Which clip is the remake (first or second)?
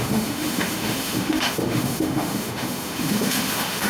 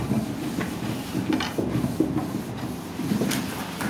first